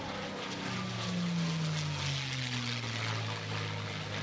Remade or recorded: recorded